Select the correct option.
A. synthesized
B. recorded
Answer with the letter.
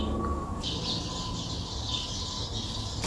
B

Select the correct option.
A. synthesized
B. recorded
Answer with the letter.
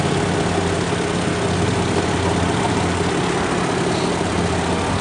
B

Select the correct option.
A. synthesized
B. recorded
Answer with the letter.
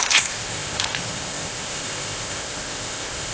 A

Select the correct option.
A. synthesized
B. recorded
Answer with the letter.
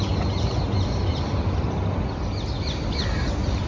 B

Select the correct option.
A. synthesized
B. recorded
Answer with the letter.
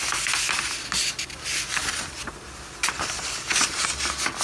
B